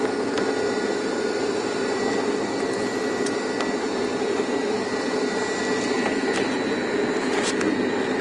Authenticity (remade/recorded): recorded